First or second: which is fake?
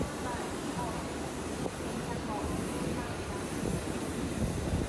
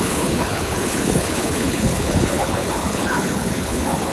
second